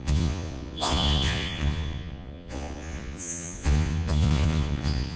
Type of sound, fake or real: fake